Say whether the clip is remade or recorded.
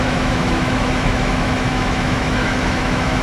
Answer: remade